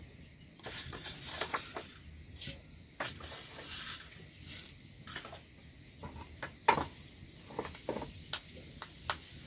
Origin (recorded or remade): recorded